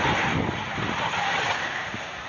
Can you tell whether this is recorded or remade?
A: recorded